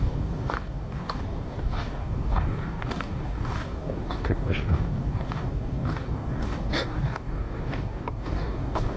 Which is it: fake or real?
fake